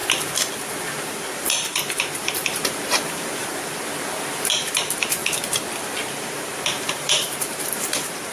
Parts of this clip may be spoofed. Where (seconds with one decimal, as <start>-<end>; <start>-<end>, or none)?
1.0-3.5; 4.5-5.2; 6.0-8.3